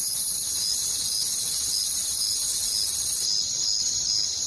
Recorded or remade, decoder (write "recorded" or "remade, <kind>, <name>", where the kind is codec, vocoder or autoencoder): recorded